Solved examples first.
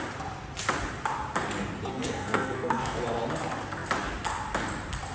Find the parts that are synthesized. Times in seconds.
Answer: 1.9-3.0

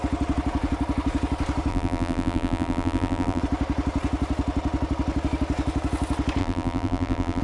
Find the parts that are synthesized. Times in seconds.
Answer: 1.7-3.4; 6.4-7.4

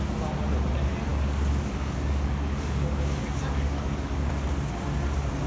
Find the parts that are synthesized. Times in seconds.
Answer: 1.1-4.3

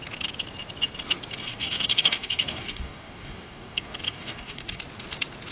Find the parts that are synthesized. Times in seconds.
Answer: 1.5-4.8

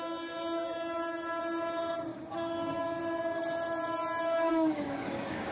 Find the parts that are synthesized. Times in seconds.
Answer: 2.1-3.0; 4.5-5.5